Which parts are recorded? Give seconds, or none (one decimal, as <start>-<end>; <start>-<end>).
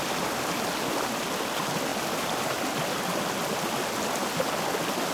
0.0-5.1